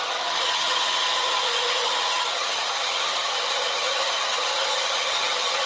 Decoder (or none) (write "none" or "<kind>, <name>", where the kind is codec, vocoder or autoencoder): vocoder, HiFi-GAN